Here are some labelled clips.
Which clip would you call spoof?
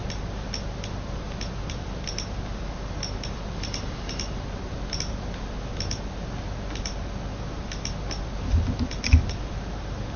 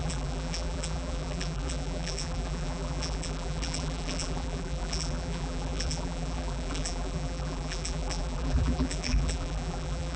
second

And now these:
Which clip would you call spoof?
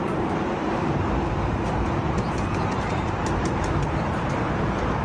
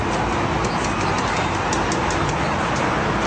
first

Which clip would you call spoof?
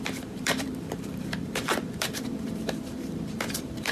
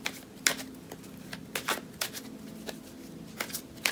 first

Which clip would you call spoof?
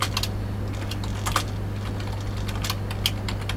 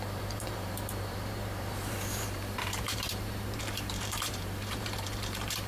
second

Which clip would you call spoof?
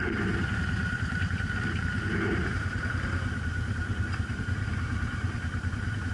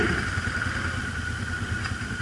first